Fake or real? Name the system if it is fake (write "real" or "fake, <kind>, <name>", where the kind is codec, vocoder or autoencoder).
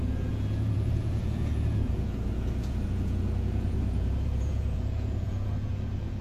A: fake, vocoder, Vocos